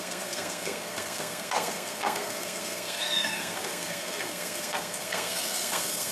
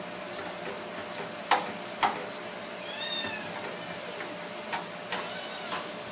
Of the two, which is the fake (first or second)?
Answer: first